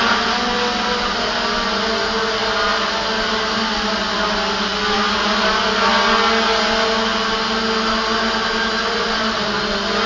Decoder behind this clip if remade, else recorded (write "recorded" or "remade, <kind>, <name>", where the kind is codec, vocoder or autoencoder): recorded